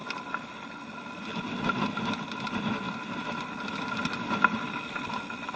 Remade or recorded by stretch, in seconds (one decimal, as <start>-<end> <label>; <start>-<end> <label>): 0.0-5.6 recorded